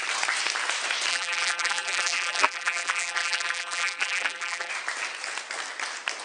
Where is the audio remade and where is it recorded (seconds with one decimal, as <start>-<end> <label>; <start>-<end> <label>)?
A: 0.0-1.1 recorded; 1.1-4.7 remade; 4.7-6.2 recorded